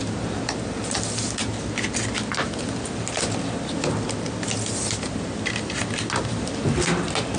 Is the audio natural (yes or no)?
yes